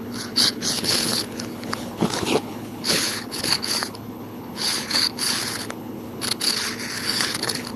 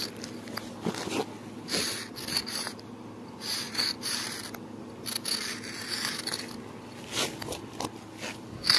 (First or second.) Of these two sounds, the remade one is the first